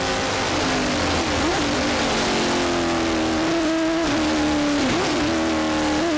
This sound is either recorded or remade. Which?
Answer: recorded